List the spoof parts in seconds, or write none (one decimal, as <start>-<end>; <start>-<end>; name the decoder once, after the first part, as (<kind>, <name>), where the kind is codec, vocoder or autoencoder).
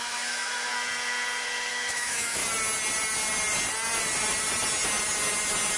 0.0-0.7 (autoencoder, DAC-VAE); 1.7-2.4